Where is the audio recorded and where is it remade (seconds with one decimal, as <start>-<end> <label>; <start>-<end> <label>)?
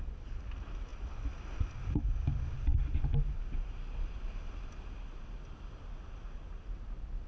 0.0-7.3 recorded